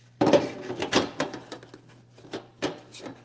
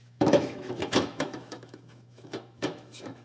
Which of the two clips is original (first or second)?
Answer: first